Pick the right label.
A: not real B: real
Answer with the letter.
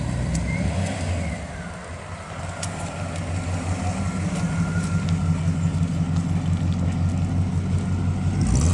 B